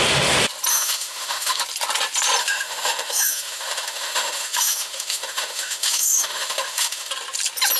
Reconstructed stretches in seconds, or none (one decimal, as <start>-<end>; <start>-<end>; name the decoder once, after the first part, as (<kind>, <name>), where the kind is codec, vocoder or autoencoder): 0.7-1.6 (autoencoder, DAC-VAE); 2.4-7.1